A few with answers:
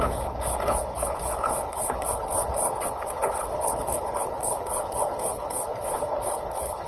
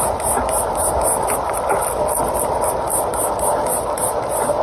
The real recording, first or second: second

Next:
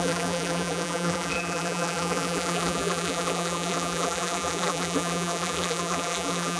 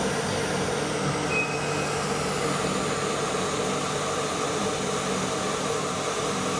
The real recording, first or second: second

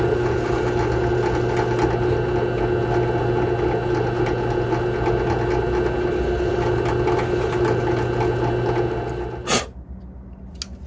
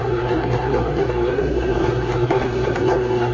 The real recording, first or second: first